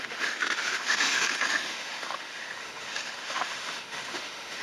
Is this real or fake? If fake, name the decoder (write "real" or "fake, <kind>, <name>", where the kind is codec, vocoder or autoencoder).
fake, autoencoder, DAC-VAE